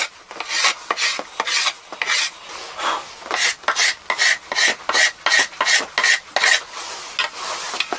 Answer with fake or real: real